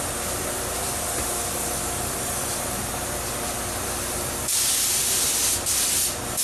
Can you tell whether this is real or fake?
real